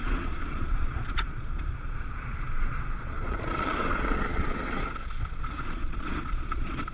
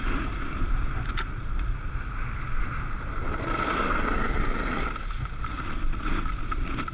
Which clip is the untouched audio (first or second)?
second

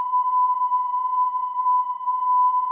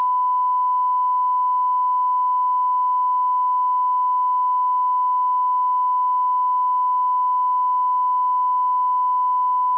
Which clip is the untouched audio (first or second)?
second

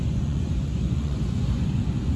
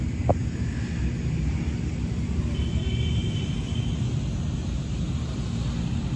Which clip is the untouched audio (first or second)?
second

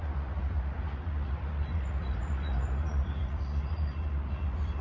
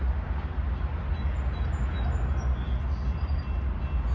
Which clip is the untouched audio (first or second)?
second